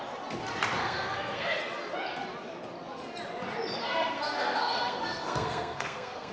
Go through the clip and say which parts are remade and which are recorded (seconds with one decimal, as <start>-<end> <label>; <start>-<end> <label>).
0.0-0.8 recorded; 0.8-1.6 remade; 1.6-3.8 recorded; 3.8-6.3 remade